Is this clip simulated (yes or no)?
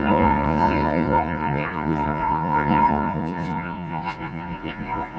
yes